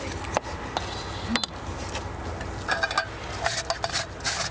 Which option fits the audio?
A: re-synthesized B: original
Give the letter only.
B